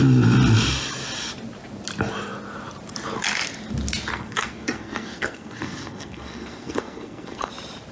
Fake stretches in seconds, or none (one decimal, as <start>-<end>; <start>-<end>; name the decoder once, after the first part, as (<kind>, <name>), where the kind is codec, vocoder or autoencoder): 4.1-7.5 (codec, SNAC)